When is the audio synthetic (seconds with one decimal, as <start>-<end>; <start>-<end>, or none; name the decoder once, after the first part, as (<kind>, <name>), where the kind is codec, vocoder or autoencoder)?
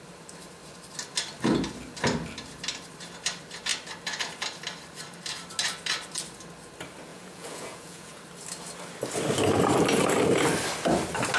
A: 7.1-8.2 (vocoder, Vocos)